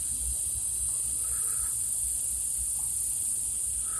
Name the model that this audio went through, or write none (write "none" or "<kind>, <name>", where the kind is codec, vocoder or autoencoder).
none